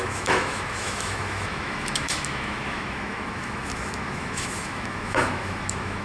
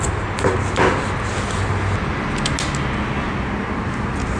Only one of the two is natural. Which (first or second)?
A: second